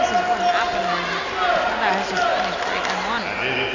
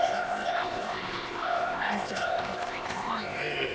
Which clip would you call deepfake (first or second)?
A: second